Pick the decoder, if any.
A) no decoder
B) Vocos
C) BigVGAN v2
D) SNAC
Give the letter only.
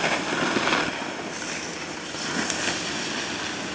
A